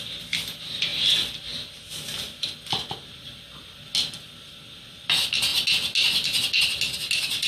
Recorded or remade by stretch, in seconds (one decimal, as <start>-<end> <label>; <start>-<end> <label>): 0.0-7.5 recorded

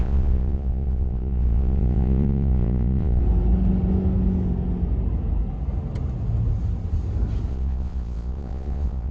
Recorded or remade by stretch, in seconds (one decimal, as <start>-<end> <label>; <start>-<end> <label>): 0.0-3.2 remade; 3.2-7.5 recorded; 7.5-9.1 remade